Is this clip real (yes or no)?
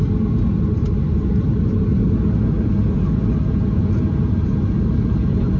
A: yes